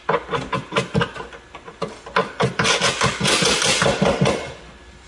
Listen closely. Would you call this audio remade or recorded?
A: recorded